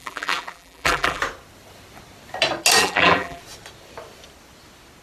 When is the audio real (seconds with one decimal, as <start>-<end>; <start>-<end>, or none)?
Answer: 1.2-2.8; 3.4-5.0